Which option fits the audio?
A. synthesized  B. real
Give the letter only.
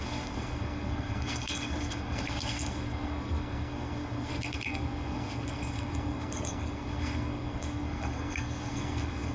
A